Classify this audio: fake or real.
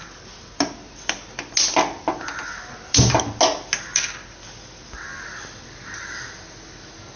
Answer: real